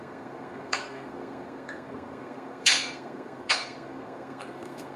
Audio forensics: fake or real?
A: fake